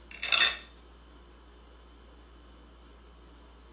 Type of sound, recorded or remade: recorded